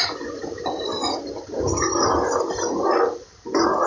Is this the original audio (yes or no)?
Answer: yes